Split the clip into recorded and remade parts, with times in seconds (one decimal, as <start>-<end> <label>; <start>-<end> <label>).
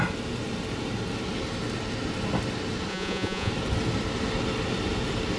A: 0.0-2.9 recorded; 2.9-3.5 remade; 3.5-5.4 recorded